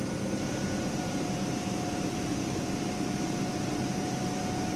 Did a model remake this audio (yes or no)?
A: yes